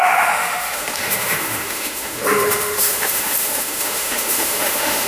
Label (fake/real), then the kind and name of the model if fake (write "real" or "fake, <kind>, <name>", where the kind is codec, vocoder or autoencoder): fake, autoencoder, DAC-VAE